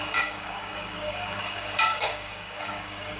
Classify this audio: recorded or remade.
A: remade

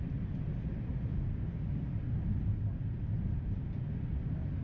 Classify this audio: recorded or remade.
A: recorded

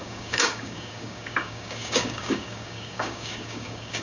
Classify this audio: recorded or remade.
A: remade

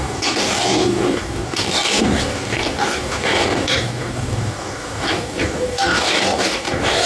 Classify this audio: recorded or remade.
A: remade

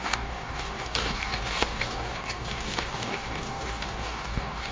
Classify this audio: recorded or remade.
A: remade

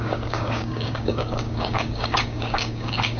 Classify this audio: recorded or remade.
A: remade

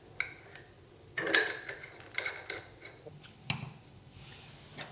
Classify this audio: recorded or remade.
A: recorded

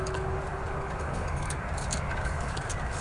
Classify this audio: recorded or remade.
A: remade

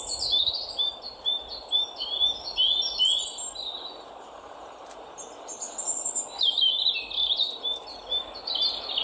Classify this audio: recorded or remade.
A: recorded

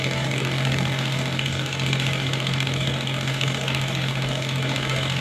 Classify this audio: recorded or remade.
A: remade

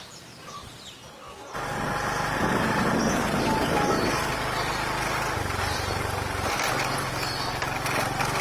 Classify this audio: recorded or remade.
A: recorded